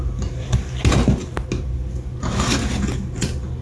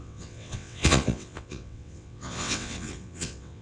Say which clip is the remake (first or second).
second